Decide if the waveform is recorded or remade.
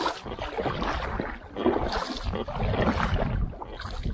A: recorded